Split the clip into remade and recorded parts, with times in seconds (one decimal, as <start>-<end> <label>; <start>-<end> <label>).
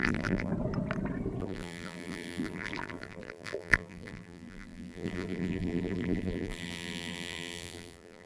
0.0-0.5 remade; 0.5-1.4 recorded; 1.4-8.3 remade